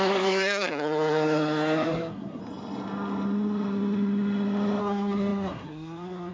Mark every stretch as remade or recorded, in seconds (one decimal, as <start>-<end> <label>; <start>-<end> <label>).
0.0-2.4 remade; 2.4-4.8 recorded; 4.8-6.3 remade